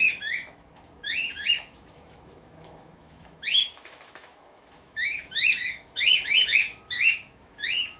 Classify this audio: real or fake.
fake